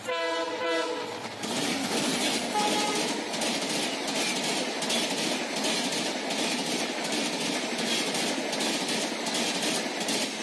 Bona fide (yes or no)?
yes